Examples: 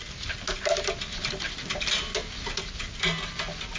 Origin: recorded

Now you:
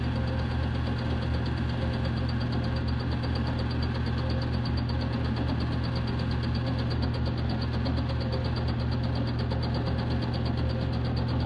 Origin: recorded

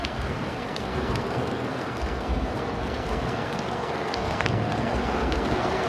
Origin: remade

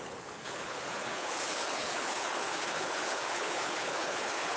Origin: remade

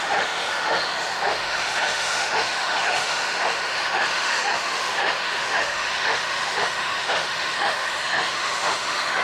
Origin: remade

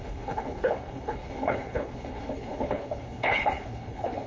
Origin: remade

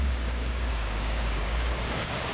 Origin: remade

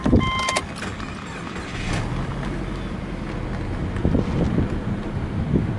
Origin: recorded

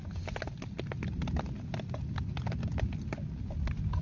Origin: recorded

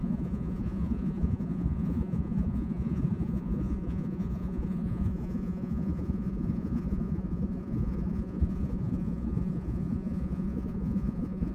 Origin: remade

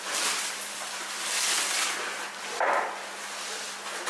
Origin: recorded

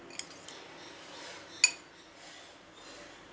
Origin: recorded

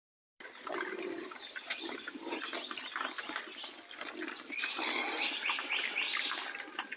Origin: recorded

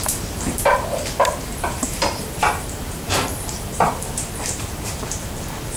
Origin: remade